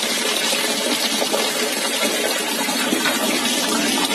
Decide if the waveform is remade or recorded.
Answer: remade